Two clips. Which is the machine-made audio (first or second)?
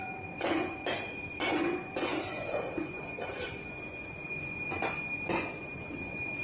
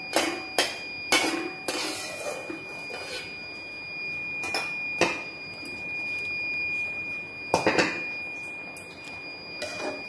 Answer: first